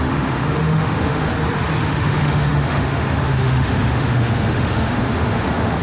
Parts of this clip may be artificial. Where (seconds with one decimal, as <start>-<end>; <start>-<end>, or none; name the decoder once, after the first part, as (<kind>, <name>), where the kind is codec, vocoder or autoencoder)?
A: 0.0-1.3 (autoencoder, DAC-VAE); 1.8-5.8